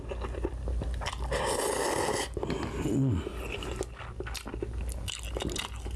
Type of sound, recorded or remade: recorded